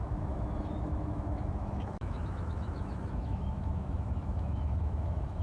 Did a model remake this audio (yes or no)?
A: yes